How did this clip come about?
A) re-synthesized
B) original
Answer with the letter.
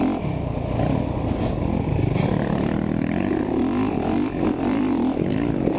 A